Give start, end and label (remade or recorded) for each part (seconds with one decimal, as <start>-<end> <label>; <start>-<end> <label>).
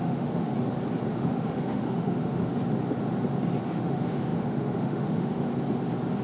0.0-0.5 remade; 0.5-1.1 recorded; 1.1-2.5 remade; 2.5-3.7 recorded; 3.7-5.5 remade; 5.5-6.2 recorded